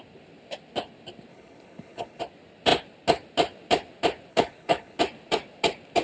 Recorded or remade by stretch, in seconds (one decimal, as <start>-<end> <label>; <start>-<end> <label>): 0.0-1.3 recorded; 1.3-2.2 remade; 2.2-4.3 recorded; 4.3-5.0 remade; 5.0-6.0 recorded